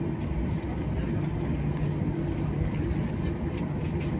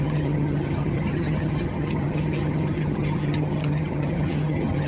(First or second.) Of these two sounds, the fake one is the second